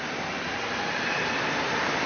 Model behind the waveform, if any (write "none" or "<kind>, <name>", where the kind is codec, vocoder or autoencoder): vocoder, BigVGAN v2